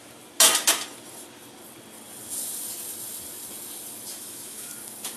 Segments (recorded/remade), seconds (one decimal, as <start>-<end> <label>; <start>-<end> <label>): 0.0-4.1 recorded; 4.1-4.7 remade; 4.7-5.2 recorded